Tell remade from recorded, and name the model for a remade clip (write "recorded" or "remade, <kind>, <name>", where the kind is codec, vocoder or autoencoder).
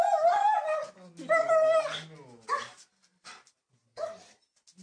recorded